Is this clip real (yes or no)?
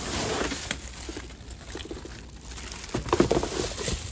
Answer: yes